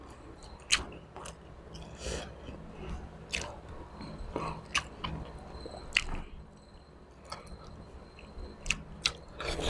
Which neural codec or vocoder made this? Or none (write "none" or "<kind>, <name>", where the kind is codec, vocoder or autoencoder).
none